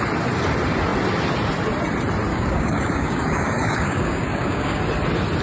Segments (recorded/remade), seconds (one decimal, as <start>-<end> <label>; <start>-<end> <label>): 0.0-2.3 recorded; 2.3-4.8 remade; 4.8-5.4 recorded